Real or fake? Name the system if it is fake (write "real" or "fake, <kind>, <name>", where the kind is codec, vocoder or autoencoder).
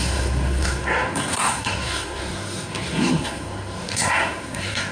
fake, codec, SNAC